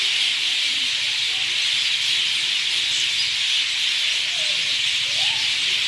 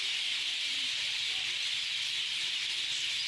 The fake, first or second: second